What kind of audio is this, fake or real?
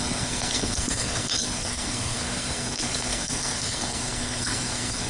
fake